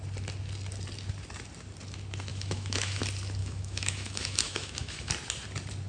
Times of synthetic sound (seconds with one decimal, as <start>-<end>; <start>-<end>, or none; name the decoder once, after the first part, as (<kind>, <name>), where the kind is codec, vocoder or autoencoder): 2.3-3.0 (autoencoder, DAC-VAE); 3.4-5.1